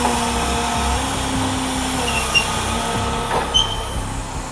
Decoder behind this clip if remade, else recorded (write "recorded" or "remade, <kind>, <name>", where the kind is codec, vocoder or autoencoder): recorded